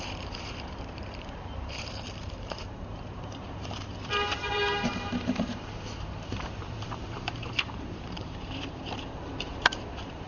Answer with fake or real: fake